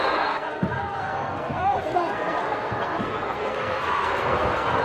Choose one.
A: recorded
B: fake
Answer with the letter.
B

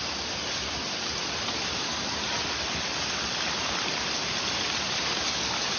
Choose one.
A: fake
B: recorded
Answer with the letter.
B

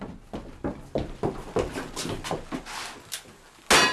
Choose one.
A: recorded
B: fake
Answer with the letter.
A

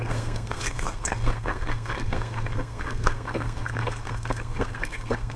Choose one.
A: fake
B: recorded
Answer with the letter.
A